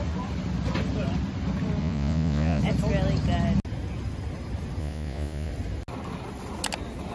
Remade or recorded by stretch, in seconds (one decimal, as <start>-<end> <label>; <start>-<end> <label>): 0.0-1.8 recorded; 1.8-2.6 remade; 2.6-4.8 recorded; 4.8-5.5 remade; 5.5-7.1 recorded